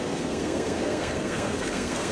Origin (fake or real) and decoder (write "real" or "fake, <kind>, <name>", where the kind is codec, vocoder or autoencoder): fake, codec, SNAC